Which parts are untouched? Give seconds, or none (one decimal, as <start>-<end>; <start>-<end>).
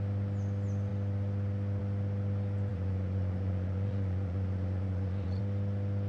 0.0-2.7; 5.4-6.1